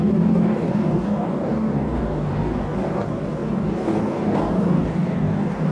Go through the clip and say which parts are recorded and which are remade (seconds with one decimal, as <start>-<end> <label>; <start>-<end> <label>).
0.0-5.7 remade